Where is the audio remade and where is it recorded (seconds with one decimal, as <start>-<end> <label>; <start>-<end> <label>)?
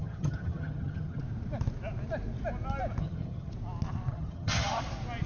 0.0-1.2 remade; 1.2-3.0 recorded; 3.0-3.5 remade; 3.5-4.1 recorded; 4.1-4.8 remade; 4.8-5.3 recorded